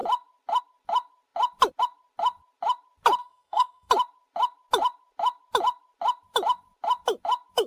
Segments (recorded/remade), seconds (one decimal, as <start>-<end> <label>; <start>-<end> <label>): 0.0-3.2 recorded; 3.2-3.9 remade; 3.9-7.7 recorded